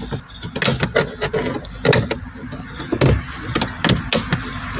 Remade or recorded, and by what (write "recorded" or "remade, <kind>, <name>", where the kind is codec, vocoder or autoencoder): recorded